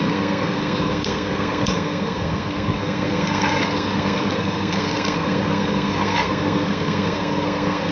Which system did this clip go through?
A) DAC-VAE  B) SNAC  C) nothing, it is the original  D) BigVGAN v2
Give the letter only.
B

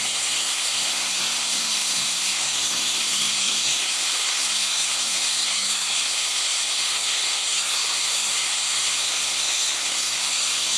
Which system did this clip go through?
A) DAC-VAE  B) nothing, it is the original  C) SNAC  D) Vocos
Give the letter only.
C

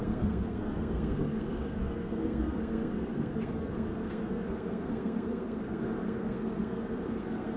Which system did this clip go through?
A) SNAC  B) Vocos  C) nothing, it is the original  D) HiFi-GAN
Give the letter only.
A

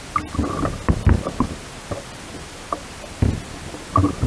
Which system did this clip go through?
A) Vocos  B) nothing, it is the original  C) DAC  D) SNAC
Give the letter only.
B